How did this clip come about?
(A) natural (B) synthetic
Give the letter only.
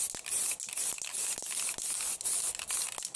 A